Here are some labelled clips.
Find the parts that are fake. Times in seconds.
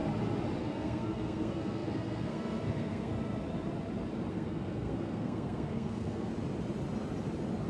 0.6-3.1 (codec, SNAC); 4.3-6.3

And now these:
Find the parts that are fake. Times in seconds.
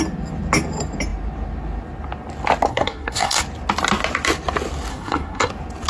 2.7-3.4 (codec, SNAC); 4.9-5.5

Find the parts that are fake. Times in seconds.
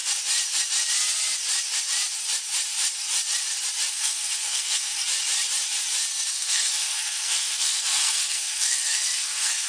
3.9-4.9 (codec, SNAC); 6.3-9.7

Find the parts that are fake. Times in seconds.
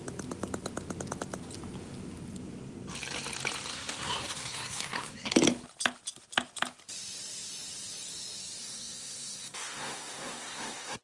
3.7-5.3 (codec, SNAC); 8.6-11.0